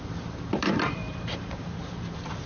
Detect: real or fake fake